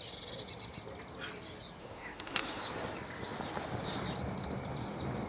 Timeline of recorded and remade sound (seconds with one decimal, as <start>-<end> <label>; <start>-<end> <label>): 0.0-1.8 recorded; 1.8-2.6 remade; 2.6-5.3 recorded